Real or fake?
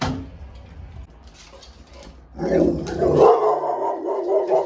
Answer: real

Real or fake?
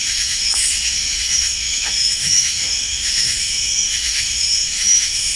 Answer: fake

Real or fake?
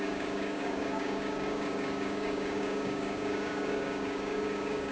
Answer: fake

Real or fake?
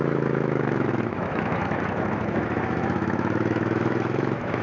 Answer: fake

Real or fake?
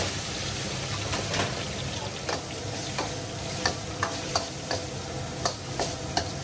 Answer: real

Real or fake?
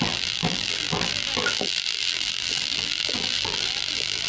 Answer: fake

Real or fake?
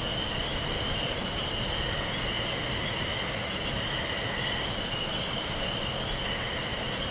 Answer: real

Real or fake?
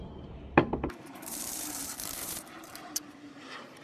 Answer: fake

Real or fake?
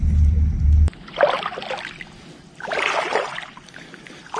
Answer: real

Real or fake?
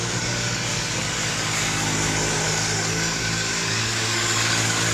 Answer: fake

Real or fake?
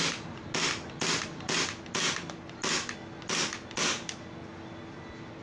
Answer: real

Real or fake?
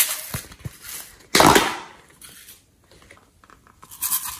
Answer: real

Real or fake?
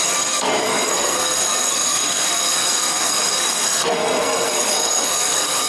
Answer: fake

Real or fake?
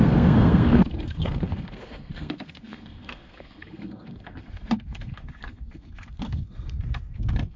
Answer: fake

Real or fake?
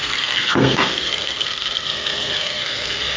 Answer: fake